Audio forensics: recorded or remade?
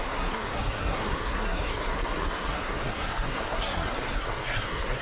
remade